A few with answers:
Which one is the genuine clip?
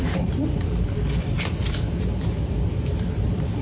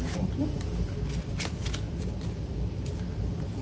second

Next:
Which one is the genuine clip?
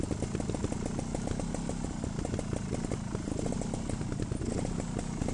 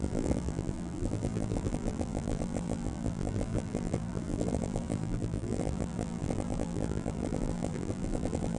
first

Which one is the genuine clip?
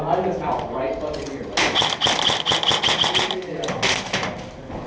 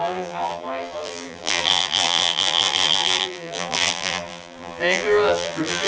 first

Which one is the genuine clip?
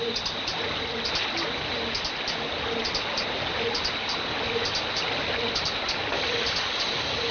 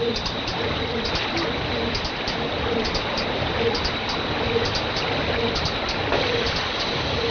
first